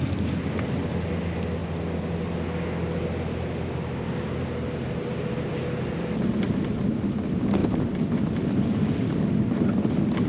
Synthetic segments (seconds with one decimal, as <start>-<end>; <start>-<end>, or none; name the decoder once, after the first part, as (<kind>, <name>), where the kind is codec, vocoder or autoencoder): none